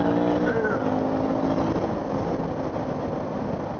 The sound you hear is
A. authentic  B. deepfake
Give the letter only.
A